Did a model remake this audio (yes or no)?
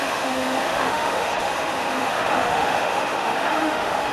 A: yes